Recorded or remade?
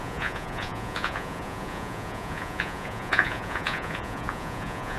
remade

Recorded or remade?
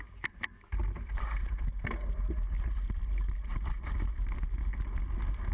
recorded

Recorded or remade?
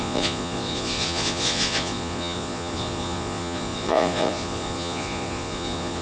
remade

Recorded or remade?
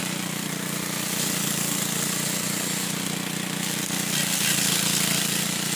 recorded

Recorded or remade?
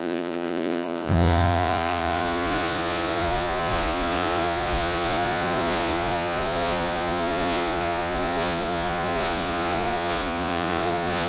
remade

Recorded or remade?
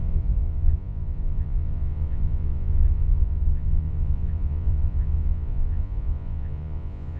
remade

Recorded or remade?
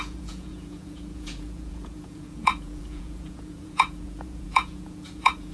remade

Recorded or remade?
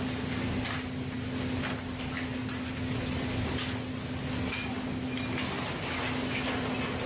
recorded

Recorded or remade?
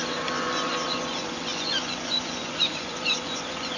remade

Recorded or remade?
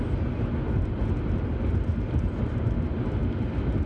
recorded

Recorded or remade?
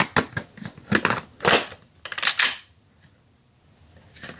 recorded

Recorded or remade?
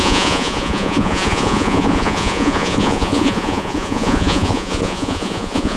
remade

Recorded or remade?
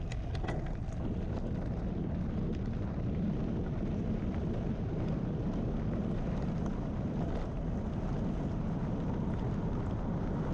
recorded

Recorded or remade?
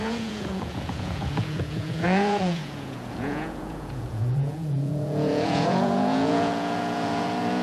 remade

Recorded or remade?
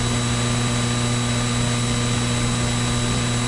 recorded